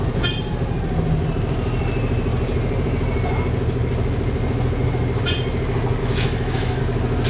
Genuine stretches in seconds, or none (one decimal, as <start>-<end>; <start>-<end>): 0.0-6.0; 6.8-7.3